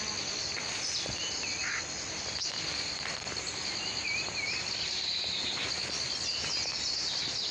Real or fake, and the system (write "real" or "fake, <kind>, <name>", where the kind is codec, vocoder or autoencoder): real